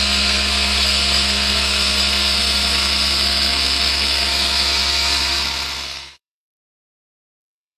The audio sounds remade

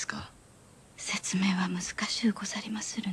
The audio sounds recorded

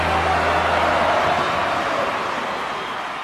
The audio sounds recorded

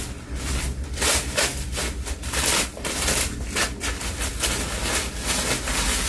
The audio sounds recorded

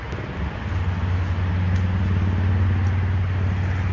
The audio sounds recorded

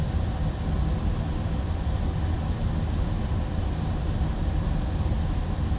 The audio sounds recorded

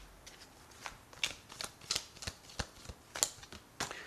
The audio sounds recorded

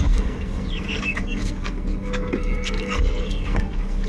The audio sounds remade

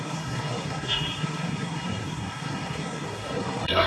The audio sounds remade